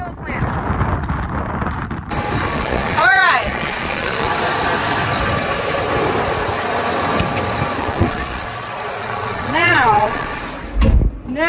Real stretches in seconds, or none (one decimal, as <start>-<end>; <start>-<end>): 0.0-2.5; 4.3-7.8; 10.4-11.5